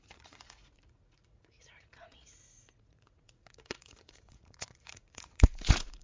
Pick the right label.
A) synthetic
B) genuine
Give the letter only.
A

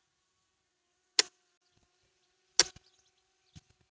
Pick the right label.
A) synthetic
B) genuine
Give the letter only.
B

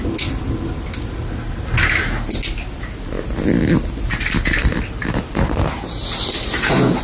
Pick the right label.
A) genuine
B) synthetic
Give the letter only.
A